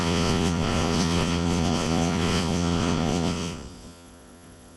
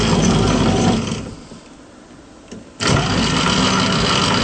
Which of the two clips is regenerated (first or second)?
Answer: first